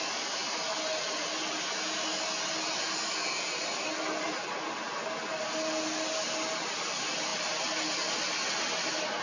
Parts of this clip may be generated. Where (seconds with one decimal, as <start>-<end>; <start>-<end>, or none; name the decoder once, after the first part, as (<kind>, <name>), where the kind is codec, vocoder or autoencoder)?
none